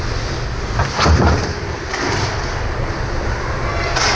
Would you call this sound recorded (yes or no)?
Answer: yes